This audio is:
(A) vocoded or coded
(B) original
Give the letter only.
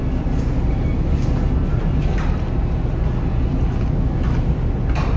B